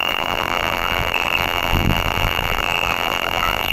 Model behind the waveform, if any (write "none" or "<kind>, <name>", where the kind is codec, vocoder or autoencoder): vocoder, BigVGAN v2